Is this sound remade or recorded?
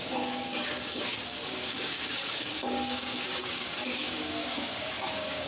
remade